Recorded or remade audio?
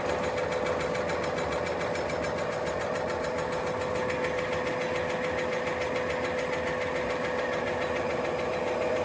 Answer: recorded